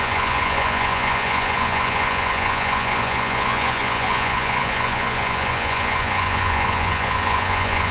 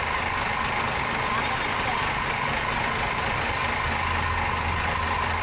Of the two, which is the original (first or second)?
second